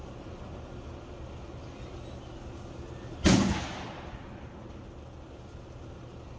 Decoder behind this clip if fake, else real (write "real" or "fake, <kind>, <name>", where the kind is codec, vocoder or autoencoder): real